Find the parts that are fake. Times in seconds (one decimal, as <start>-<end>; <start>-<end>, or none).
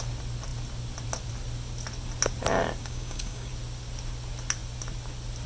2.8-3.5